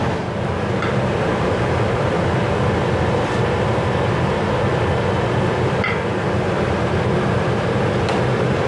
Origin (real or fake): real